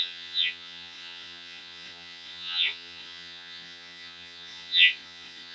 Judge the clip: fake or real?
fake